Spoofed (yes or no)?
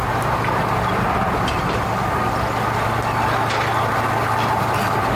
no